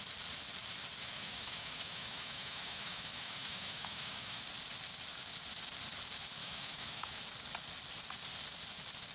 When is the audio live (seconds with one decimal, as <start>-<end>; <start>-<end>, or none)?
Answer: 0.0-1.0; 4.4-6.4; 7.2-9.1